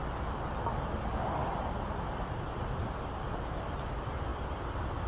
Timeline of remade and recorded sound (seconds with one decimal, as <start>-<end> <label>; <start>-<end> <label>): 0.0-0.6 remade; 0.6-4.3 recorded; 4.3-5.1 remade